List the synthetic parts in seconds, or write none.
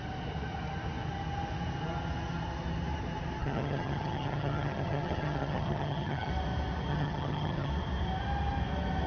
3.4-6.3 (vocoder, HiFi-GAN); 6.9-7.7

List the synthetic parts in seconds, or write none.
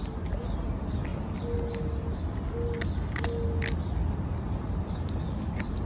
none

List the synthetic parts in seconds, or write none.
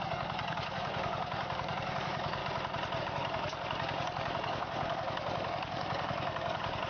0.0-2.4 (codec, DAC); 3.0-6.9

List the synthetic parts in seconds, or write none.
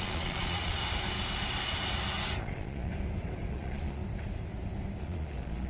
0.0-0.8 (vocoder, Vocos); 2.4-2.9; 3.5-4.0; 5.0-5.7